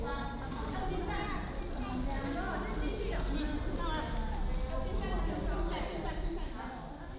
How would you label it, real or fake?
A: real